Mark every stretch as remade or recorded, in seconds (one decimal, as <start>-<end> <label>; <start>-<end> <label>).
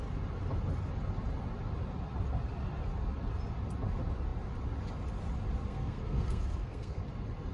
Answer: 0.0-5.7 recorded; 5.7-7.0 remade; 7.0-7.5 recorded